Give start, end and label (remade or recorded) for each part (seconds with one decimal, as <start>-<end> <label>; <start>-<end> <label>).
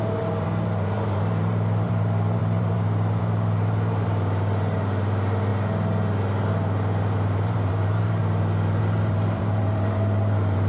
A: 0.0-5.5 remade; 5.5-6.5 recorded; 6.5-8.2 remade; 8.2-8.8 recorded; 8.8-10.7 remade